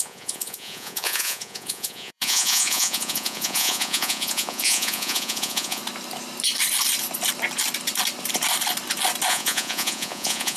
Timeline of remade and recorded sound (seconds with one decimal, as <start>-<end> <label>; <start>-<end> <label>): 0.0-5.8 remade; 5.8-9.3 recorded; 9.3-10.6 remade